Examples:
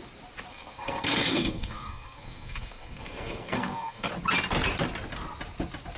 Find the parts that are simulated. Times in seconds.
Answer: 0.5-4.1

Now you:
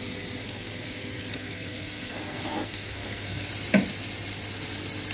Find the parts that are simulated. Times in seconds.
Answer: 0.4-3.5

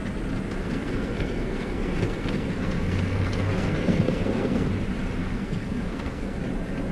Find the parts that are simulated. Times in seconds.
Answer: 0.6-4.7; 5.2-6.4

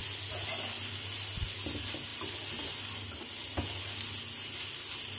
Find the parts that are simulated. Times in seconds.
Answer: none

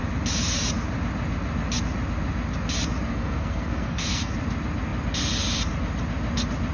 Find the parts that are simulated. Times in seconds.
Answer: 3.1-4.3

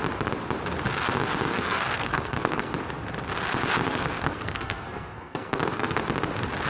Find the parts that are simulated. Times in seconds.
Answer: 1.5-2.7; 3.9-6.0

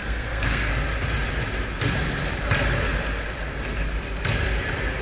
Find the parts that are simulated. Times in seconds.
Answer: 0.0-0.7